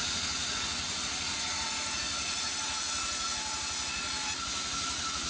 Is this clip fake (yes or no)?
yes